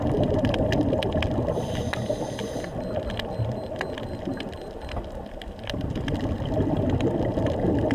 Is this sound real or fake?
real